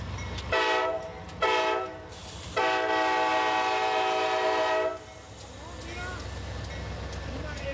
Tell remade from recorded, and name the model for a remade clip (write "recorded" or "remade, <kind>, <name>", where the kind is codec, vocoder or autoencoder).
recorded